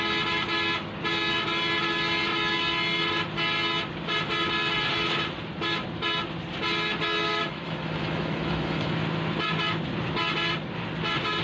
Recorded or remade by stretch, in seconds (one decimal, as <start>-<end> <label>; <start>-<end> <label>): 0.0-7.4 recorded; 7.4-8.9 remade; 8.9-11.4 recorded